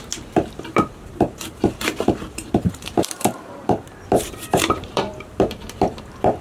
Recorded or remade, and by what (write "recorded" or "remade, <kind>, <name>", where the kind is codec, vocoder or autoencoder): remade, vocoder, BigVGAN v2